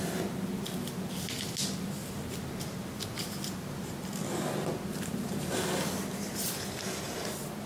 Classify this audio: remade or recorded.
recorded